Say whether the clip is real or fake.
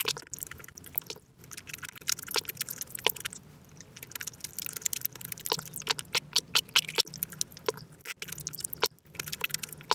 real